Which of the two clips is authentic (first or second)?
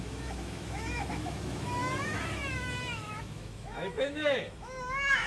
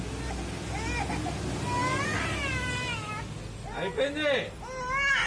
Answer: second